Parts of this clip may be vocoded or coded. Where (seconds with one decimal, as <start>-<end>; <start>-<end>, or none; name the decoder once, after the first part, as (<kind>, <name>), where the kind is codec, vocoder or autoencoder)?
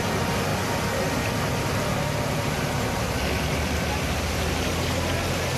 none